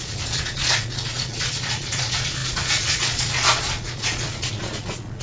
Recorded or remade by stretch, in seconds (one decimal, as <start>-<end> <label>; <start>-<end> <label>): 0.0-5.2 remade